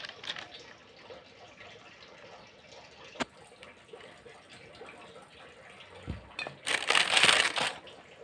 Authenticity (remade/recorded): recorded